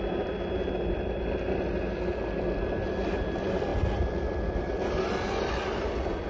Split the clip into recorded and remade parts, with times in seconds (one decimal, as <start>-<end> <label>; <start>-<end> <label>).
0.0-6.3 recorded